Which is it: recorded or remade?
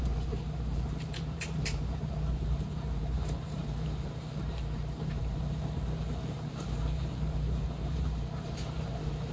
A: remade